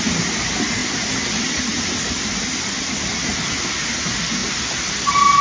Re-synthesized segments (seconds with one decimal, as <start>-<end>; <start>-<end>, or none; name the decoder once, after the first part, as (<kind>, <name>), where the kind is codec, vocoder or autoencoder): none

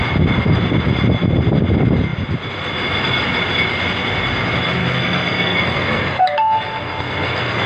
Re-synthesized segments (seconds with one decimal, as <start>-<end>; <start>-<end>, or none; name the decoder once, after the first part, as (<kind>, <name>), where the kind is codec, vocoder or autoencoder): 4.8-7.7 (codec, SNAC)

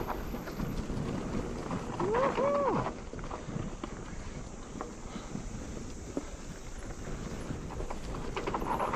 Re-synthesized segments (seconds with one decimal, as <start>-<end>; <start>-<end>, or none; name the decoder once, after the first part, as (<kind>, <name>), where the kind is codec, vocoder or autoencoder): none

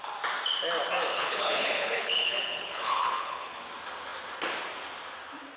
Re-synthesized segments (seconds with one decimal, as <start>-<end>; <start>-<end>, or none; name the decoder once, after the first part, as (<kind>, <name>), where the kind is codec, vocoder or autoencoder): 1.1-3.6 (codec, HILCodec)

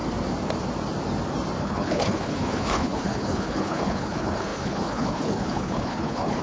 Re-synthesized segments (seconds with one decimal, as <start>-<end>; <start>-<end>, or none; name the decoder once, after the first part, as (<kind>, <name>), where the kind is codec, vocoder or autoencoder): 1.6-6.4 (codec, HILCodec)

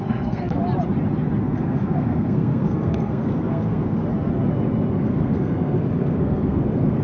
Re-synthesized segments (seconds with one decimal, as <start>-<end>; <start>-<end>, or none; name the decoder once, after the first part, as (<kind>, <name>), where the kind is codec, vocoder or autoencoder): 0.0-0.6 (codec, SNAC); 1.4-4.0; 4.9-7.0

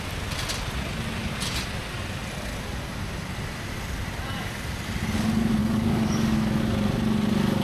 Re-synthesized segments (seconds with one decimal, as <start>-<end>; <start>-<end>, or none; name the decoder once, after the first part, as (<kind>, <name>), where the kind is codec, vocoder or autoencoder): 5.6-6.6 (codec, DAC)